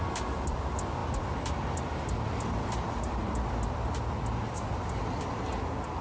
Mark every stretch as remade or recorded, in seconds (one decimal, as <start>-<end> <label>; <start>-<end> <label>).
0.0-1.0 recorded; 1.0-3.5 remade; 3.5-6.0 recorded